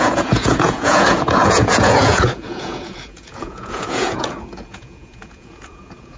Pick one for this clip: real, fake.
fake